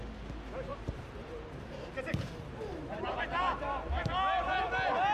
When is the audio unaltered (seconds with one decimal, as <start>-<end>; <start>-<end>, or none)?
0.0-0.7; 3.2-5.1